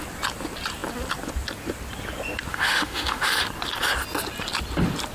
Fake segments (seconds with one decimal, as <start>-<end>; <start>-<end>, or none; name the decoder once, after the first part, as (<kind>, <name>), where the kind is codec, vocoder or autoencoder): 2.5-3.2 (autoencoder, DAC-VAE)